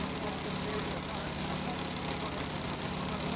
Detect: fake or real real